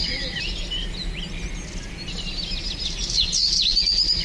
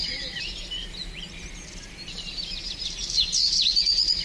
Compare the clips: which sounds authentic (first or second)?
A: first